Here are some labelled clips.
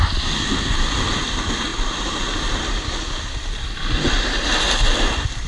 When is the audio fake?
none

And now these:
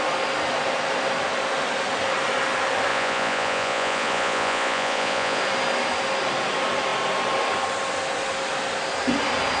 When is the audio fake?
2.9-5.4 (vocoder, Vocos)

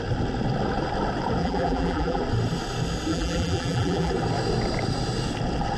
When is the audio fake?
1.4-2.2 (vocoder, BigVGAN v2); 3.1-4.1

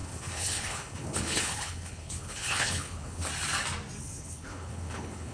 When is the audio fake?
0.0-3.3 (codec, HILCodec); 4.0-5.3

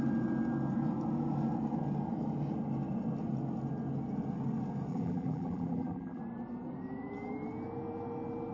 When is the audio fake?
4.9-6.2 (vocoder, BigVGAN v2)

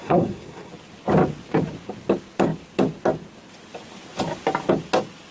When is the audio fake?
0.0-0.7 (codec, SNAC)